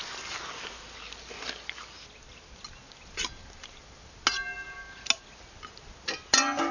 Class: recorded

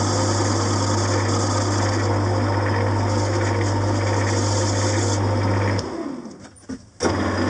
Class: recorded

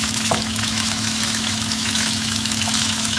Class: remade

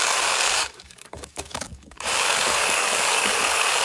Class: remade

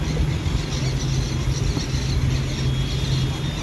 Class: recorded